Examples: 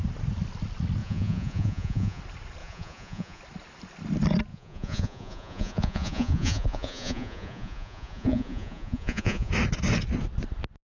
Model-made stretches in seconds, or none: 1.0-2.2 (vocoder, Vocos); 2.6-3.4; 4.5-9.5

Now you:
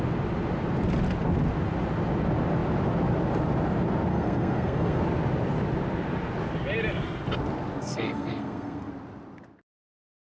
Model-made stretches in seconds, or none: 4.1-5.0 (codec, SNAC); 7.8-8.9

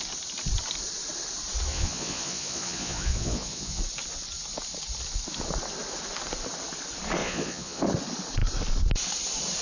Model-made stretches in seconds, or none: 1.7-3.8 (vocoder, Vocos); 7.2-7.8

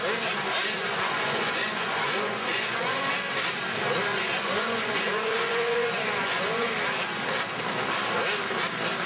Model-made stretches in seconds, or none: 0.8-3.1 (vocoder, Vocos); 4.1-6.7

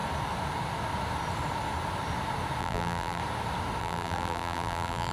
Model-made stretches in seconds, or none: 2.6-3.2 (vocoder, BigVGAN v2); 3.8-5.1

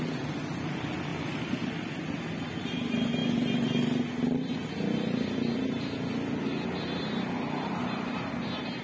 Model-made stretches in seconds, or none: none

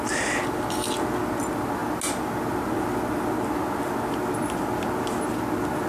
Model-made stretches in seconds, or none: none

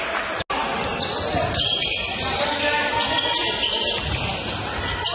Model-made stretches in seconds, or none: none